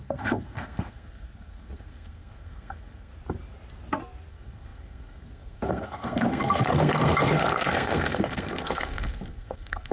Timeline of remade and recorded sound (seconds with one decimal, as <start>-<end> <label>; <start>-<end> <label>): 0.0-3.1 remade; 3.1-4.3 recorded; 4.3-9.9 remade